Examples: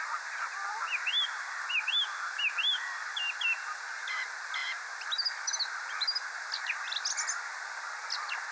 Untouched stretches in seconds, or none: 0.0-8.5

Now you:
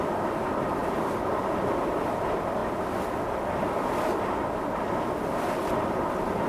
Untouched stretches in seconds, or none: 0.0-6.5

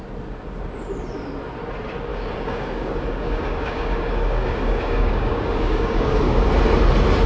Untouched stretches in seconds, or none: 0.0-2.1; 6.5-7.3

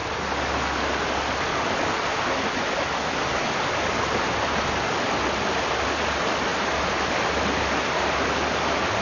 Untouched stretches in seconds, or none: 0.0-9.0

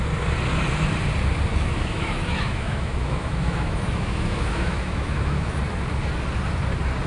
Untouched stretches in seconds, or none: 0.0-1.5; 5.6-7.1

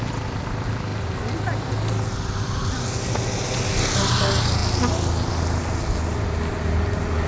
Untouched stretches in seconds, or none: 0.0-7.3